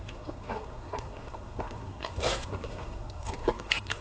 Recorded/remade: remade